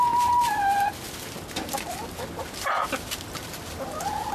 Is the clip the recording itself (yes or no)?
yes